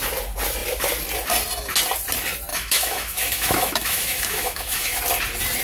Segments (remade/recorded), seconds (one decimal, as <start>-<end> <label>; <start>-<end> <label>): 0.0-2.5 recorded; 2.5-5.0 remade; 5.0-5.6 recorded